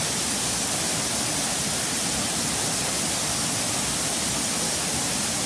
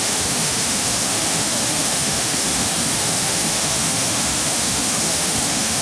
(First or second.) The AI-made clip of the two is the second